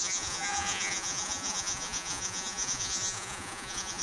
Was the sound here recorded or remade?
remade